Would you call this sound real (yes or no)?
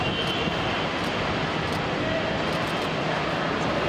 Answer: yes